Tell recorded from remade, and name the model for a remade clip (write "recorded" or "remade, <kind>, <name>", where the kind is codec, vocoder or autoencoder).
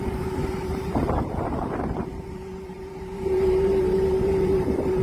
remade, vocoder, BigVGAN v2